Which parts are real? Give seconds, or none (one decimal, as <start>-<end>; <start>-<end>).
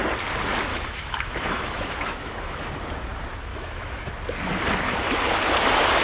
0.0-0.7; 2.7-3.5; 4.1-6.0